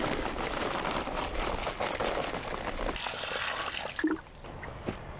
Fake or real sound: real